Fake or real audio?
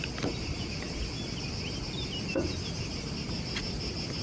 real